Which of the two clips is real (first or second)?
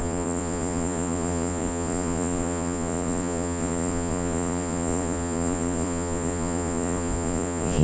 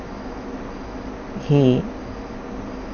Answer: second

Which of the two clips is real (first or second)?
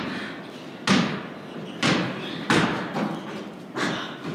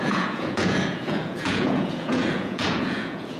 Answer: first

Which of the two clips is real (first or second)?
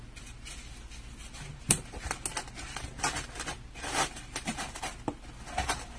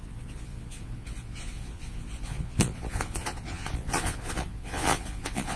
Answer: first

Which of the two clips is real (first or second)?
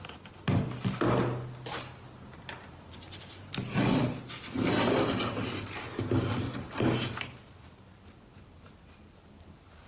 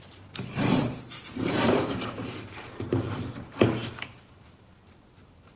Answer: first